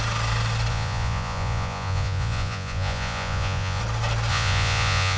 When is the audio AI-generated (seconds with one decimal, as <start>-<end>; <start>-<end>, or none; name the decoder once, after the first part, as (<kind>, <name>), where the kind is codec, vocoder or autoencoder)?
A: 0.7-3.8 (vocoder, Vocos); 4.3-5.2